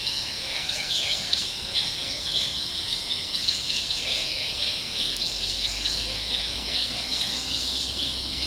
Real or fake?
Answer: fake